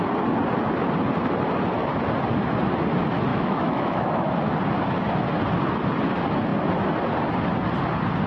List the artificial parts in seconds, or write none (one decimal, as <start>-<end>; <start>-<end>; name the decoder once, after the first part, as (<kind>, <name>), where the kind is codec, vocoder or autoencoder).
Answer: 3.3-4.3 (autoencoder, DAC-VAE)